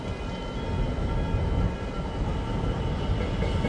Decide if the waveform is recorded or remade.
recorded